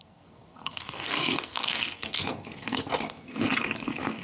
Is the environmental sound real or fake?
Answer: fake